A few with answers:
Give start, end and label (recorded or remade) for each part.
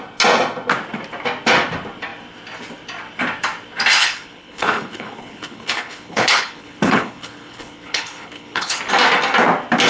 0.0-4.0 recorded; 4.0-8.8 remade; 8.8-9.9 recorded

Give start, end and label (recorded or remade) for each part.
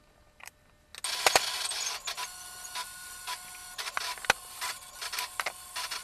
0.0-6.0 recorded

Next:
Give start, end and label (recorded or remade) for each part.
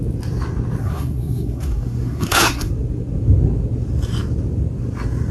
0.0-0.8 recorded; 0.8-2.7 remade; 2.7-5.3 recorded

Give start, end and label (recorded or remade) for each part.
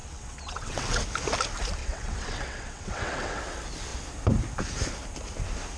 0.0-1.0 remade; 1.0-1.8 recorded; 1.8-3.4 remade; 3.4-5.8 recorded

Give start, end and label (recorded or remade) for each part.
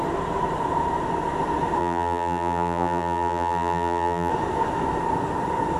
0.0-1.8 recorded; 1.8-4.3 remade; 4.3-5.8 recorded